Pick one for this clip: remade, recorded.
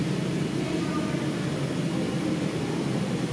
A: recorded